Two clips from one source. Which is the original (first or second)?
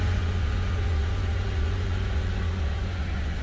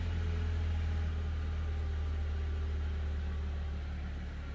second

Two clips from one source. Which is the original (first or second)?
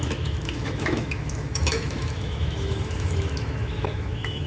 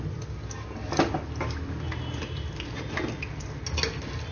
second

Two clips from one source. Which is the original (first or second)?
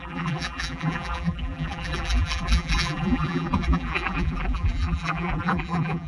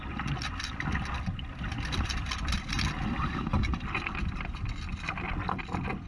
second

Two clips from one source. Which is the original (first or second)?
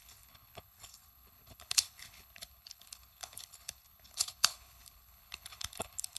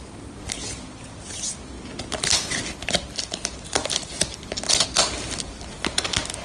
second